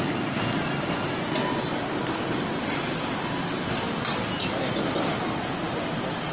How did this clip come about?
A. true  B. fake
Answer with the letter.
A